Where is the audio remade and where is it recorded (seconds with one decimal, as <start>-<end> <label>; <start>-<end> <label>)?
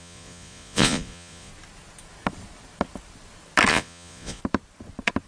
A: 0.0-1.5 remade; 1.5-3.7 recorded; 3.7-4.4 remade; 4.4-5.3 recorded